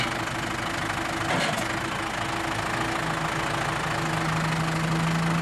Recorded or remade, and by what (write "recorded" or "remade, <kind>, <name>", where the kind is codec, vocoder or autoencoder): recorded